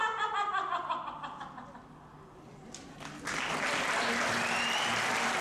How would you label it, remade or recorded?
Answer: recorded